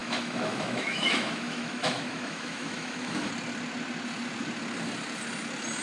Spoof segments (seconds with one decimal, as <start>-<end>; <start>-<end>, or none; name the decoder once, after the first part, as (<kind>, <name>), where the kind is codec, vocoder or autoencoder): 0.0-3.3 (autoencoder, DAC-VAE)